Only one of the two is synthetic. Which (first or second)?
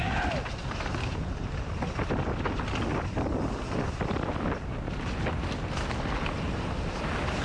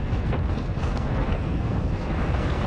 second